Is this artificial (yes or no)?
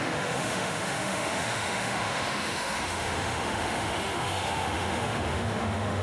yes